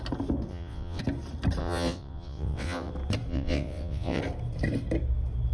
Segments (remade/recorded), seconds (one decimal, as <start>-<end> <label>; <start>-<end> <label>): 0.0-0.5 recorded; 0.5-1.0 remade; 1.0-1.6 recorded; 1.6-2.9 remade; 2.9-3.3 recorded; 3.3-4.2 remade; 4.2-5.5 recorded